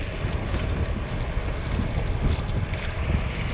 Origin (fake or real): real